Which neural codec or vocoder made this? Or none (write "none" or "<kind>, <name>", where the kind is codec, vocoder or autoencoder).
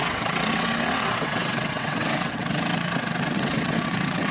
vocoder, WaveNeXt